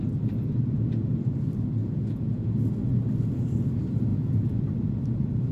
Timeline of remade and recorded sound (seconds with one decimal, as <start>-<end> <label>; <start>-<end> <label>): 0.0-1.8 recorded; 1.8-2.5 remade; 2.5-4.1 recorded; 4.1-4.6 remade; 4.6-5.5 recorded